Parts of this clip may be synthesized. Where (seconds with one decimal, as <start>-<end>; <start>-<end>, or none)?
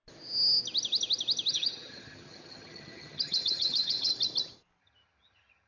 1.5-4.1; 4.8-5.7